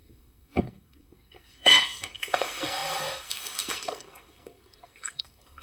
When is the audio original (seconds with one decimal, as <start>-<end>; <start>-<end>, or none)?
none